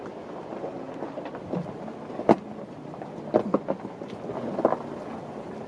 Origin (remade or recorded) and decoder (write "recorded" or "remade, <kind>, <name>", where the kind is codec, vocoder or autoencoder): recorded